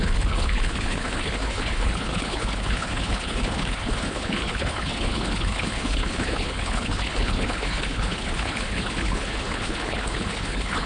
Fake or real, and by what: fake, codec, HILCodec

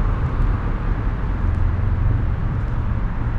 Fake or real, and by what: fake, vocoder, BigVGAN v2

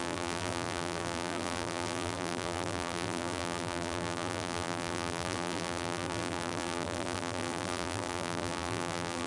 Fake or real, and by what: fake, vocoder, BigVGAN v2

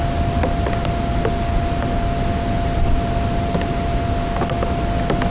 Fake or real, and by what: real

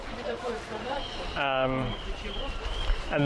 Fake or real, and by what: fake, vocoder, BigVGAN v2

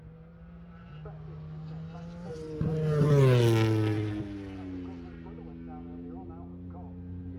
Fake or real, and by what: real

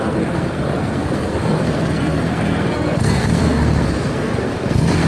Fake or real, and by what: fake, codec, SNAC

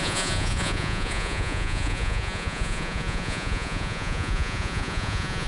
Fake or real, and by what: fake, vocoder, Vocos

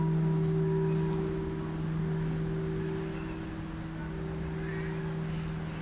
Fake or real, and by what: real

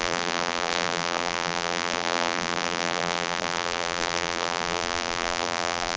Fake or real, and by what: fake, vocoder, BigVGAN v2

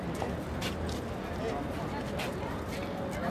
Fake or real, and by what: real